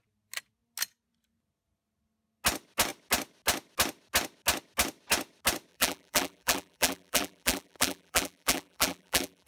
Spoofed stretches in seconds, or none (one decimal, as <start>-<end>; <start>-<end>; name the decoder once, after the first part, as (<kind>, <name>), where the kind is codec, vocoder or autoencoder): 5.7-9.5 (vocoder, BigVGAN v2)